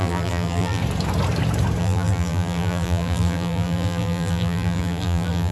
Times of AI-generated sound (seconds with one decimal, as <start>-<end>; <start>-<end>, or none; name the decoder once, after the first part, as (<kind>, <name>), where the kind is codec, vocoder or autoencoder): 0.0-0.8 (vocoder, BigVGAN v2); 1.8-5.5